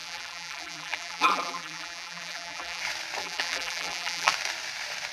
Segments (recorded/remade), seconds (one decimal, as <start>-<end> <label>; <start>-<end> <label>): 0.0-2.8 remade; 2.8-3.2 recorded; 3.2-4.3 remade; 4.3-5.1 recorded